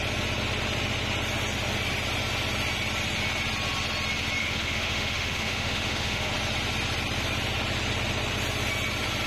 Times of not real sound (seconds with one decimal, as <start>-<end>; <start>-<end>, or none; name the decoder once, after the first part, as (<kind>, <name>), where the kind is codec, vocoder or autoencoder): 4.4-6.3 (autoencoder, DAC-VAE)